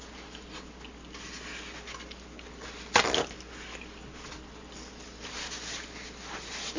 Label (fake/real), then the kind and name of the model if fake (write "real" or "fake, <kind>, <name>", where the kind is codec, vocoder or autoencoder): real